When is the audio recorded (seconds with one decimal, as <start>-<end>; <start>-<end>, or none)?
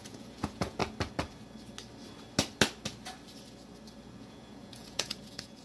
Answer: 0.8-4.2